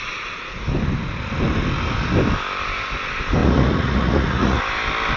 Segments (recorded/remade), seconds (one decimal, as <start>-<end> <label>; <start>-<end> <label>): 0.0-3.4 recorded; 3.4-4.6 remade; 4.6-5.2 recorded